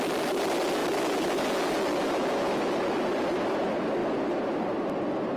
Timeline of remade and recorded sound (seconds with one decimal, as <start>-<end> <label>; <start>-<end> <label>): 0.0-5.4 recorded